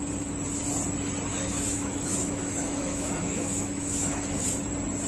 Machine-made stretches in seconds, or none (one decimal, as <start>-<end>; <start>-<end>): 1.3-4.4